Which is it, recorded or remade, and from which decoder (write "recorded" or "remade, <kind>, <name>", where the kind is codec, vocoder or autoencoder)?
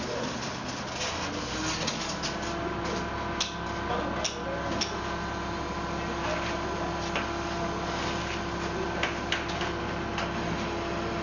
recorded